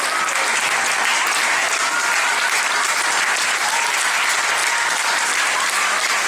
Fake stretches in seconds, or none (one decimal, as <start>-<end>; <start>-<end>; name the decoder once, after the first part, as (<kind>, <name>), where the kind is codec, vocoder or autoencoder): 4.6-6.3 (vocoder, BigVGAN v2)